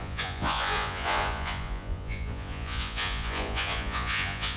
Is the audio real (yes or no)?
no